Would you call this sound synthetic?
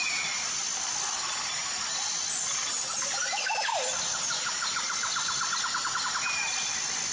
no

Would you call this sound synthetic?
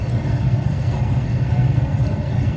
yes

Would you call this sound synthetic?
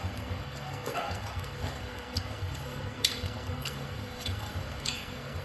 yes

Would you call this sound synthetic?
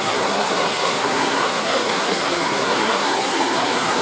yes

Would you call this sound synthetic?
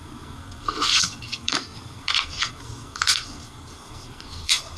yes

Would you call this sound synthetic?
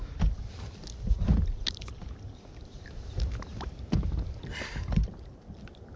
no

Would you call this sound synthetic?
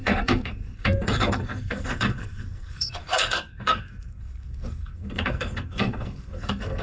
yes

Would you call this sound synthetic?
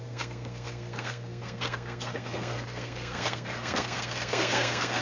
yes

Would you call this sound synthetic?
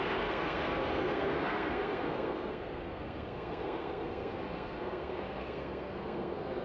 yes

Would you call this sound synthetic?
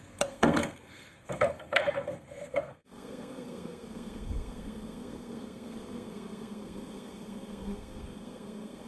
yes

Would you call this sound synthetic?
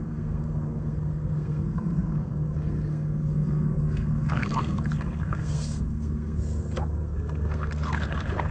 yes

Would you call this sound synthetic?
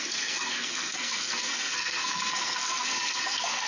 yes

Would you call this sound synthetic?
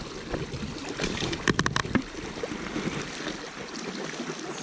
no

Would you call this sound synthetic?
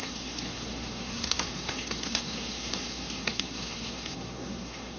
yes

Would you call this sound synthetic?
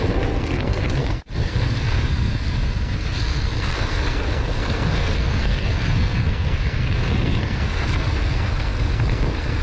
yes